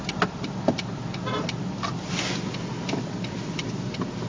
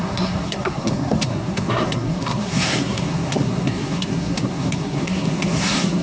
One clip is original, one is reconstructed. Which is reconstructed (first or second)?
second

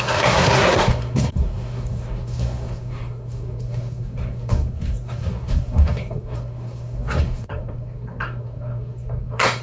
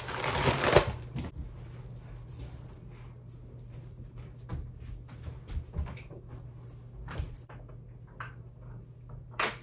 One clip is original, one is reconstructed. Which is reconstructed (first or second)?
first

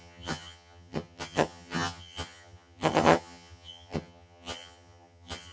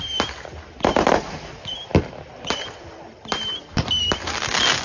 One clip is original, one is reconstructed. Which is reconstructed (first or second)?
first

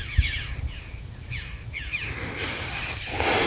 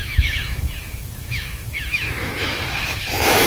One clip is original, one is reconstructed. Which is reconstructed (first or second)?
second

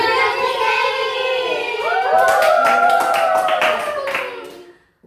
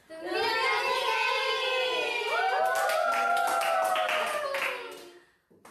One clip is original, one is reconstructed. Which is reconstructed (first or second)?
first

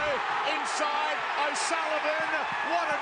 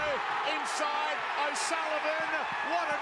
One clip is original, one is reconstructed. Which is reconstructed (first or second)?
first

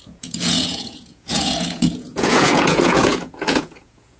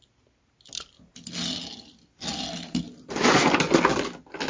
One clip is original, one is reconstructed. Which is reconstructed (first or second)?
first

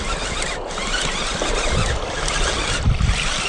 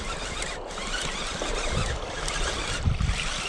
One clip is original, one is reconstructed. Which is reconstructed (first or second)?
second